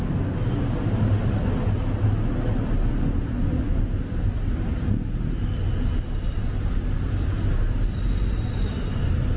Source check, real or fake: real